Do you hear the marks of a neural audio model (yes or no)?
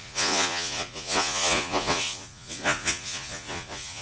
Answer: yes